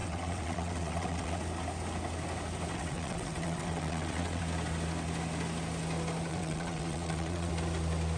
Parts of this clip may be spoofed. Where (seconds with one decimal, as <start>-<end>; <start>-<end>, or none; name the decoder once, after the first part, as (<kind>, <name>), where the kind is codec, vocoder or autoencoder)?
0.0-1.4 (vocoder, WaveNeXt); 2.7-4.4; 6.3-7.5

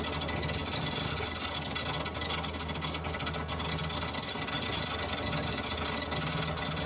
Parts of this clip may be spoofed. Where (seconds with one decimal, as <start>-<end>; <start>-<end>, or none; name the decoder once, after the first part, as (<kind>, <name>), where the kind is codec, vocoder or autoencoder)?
none

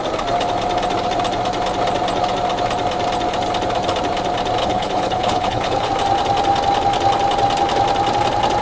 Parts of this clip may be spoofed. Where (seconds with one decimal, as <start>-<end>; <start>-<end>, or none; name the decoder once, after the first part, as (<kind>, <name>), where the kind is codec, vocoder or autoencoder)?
4.6-5.9 (codec, HILCodec)

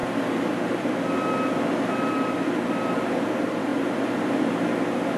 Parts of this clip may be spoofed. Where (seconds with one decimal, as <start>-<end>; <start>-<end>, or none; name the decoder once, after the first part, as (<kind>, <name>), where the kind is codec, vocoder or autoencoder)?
none